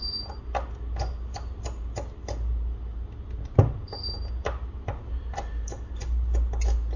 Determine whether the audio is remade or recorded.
recorded